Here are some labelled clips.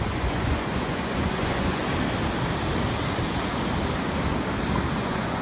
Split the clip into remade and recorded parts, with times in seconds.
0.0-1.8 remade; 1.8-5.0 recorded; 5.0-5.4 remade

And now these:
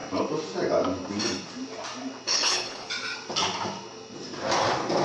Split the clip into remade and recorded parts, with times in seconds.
0.0-2.3 recorded; 2.3-2.9 remade; 2.9-5.0 recorded

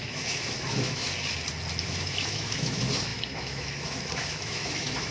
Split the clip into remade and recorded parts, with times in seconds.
0.0-1.1 remade; 1.1-1.8 recorded; 1.8-5.1 remade

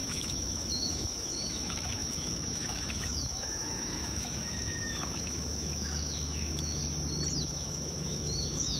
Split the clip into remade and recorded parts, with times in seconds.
0.0-6.8 remade; 6.8-7.4 recorded; 7.4-8.8 remade

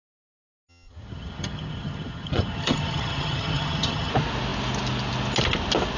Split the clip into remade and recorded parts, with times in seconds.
0.0-0.7 recorded; 0.7-4.1 remade; 4.1-6.0 recorded

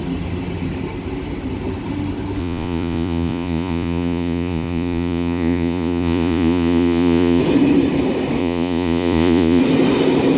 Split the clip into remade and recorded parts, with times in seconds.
0.0-2.4 recorded; 2.4-7.4 remade; 7.4-8.4 recorded; 8.4-9.6 remade; 9.6-10.4 recorded

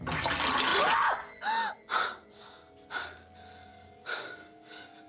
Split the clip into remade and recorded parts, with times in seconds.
0.0-3.7 recorded; 3.7-5.1 remade

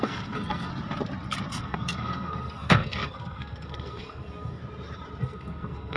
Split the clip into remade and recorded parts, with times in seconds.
0.0-0.7 remade; 0.7-1.5 recorded; 1.5-4.6 remade; 4.6-5.2 recorded; 5.2-6.0 remade